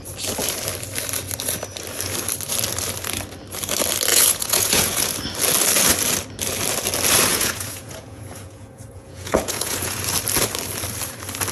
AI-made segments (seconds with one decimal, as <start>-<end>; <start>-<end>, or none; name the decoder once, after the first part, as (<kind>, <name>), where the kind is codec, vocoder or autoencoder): 4.1-5.0 (vocoder, Vocos); 7.3-10.0